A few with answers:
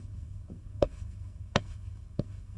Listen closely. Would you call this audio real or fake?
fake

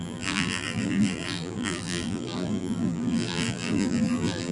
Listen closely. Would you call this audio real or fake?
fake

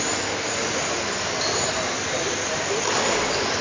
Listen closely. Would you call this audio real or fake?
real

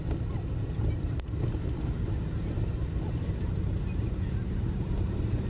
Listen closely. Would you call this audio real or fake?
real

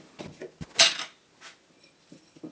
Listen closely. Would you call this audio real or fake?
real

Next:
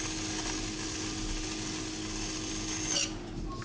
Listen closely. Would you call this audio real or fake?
real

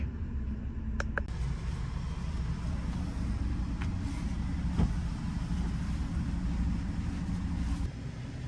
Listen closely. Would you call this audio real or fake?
real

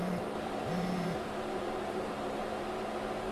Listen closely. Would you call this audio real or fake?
fake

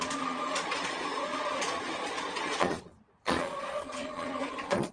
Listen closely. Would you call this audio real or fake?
fake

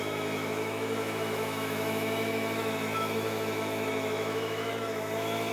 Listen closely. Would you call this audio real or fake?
fake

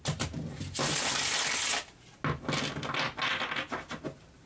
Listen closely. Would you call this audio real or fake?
real